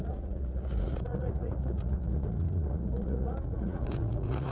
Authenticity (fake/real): fake